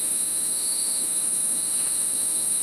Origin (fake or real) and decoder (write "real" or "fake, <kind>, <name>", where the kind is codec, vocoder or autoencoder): fake, autoencoder, DAC-VAE